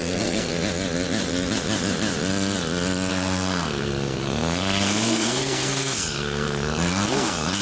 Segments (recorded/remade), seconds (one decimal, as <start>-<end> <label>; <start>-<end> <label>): 0.0-0.5 remade; 0.5-3.1 recorded; 3.1-7.6 remade